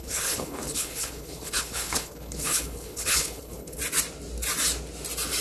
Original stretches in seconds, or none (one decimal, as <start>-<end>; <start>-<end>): 3.8-5.4